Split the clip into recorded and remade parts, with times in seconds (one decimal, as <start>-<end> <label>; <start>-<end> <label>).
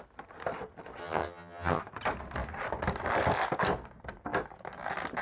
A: 0.0-1.0 recorded; 1.0-1.8 remade; 1.8-5.2 recorded